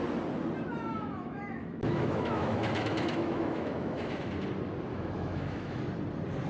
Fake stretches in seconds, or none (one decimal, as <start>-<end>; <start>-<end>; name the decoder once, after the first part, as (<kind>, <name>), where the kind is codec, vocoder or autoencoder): 0.9-4.3 (autoencoder, DAC-VAE); 4.9-5.8